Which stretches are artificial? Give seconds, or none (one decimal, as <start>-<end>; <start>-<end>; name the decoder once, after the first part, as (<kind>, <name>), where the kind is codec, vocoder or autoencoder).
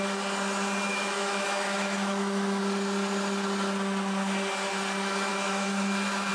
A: 0.9-2.6 (autoencoder, DAC-VAE); 5.3-6.3